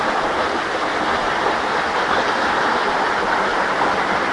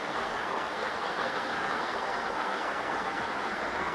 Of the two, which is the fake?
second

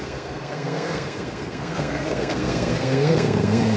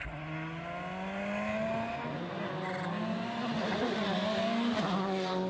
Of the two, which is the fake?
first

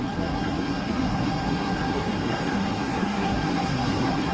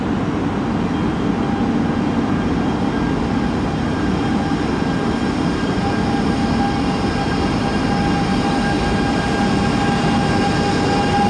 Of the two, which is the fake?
first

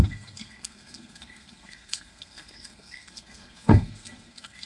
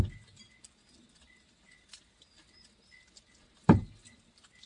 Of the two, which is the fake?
first